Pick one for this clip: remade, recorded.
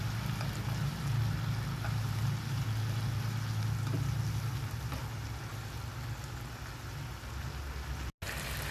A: recorded